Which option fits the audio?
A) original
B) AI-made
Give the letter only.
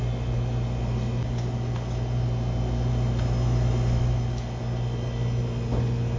A